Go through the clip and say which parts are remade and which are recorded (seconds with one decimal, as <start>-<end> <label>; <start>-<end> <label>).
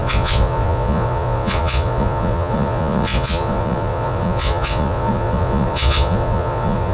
0.0-6.9 remade